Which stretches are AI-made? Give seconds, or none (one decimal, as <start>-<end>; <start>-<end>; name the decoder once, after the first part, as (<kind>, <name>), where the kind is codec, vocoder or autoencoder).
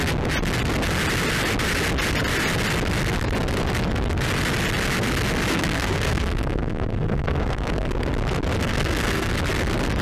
5.5-7.9 (codec, SNAC); 8.6-9.3